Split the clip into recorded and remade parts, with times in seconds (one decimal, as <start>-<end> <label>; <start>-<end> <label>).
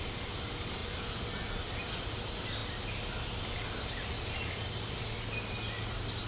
0.0-6.3 recorded